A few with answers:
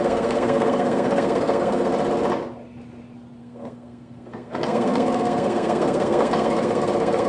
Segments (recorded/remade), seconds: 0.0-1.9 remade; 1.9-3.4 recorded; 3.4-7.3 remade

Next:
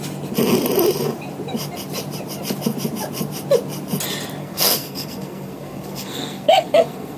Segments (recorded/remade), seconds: 0.0-4.4 recorded; 4.4-7.2 remade

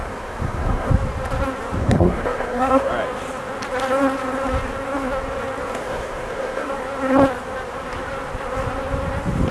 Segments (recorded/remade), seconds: 0.0-0.9 remade; 0.9-1.8 recorded; 1.8-2.9 remade; 2.9-5.8 recorded; 5.8-6.7 remade; 6.7-9.5 recorded